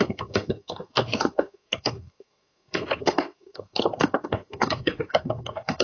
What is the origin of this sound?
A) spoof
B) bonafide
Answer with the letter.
A